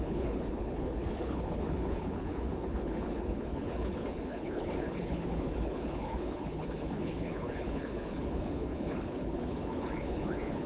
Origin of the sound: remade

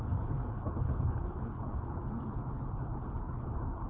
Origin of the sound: remade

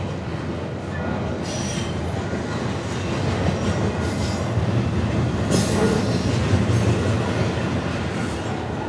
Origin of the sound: recorded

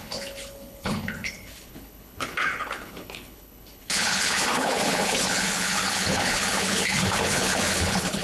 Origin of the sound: remade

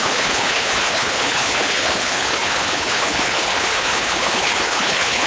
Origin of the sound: remade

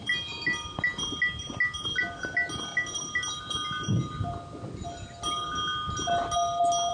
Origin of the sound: recorded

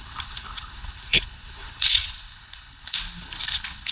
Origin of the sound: remade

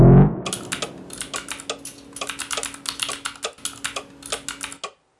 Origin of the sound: recorded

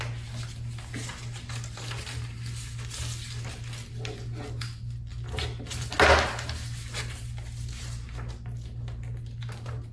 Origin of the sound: recorded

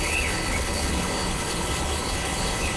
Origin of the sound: remade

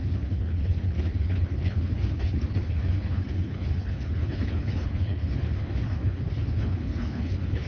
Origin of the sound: remade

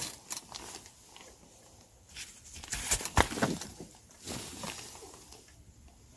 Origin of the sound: recorded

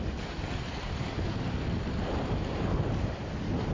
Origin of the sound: recorded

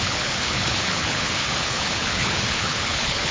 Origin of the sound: remade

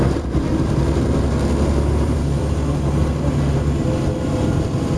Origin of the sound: recorded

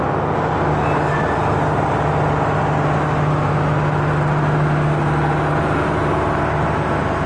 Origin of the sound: recorded